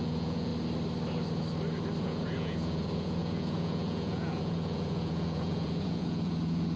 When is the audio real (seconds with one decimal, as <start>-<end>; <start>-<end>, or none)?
0.5-2.0